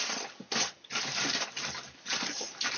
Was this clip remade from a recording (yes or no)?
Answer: no